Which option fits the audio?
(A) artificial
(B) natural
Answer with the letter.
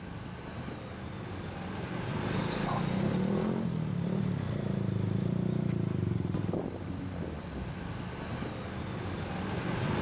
B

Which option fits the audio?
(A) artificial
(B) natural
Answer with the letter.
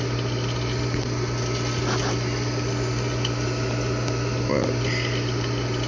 B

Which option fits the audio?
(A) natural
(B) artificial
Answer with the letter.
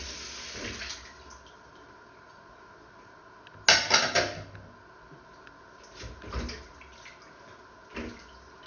A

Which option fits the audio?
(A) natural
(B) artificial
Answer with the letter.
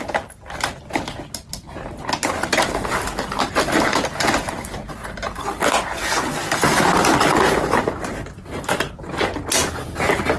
A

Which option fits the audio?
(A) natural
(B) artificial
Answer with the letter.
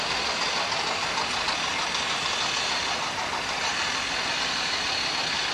A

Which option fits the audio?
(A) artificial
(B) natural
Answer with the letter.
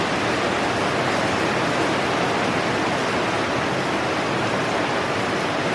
B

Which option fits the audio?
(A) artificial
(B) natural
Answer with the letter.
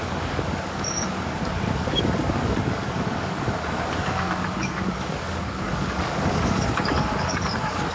A